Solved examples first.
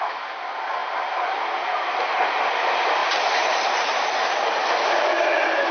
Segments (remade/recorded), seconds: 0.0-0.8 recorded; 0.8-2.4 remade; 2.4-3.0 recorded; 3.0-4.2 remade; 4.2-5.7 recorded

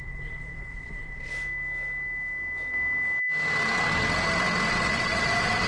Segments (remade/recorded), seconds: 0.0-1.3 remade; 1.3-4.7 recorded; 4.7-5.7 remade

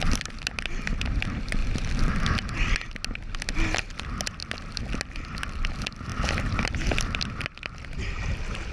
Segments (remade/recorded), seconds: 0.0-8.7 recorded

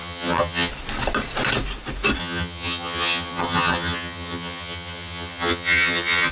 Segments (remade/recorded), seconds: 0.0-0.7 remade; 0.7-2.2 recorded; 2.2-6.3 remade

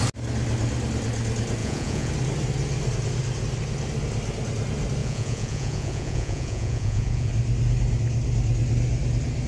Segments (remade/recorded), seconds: 0.0-1.6 recorded; 1.6-2.1 remade; 2.1-5.0 recorded; 5.0-7.3 remade; 7.3-9.5 recorded

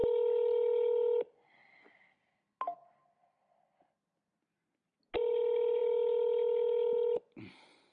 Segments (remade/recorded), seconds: 0.0-7.9 recorded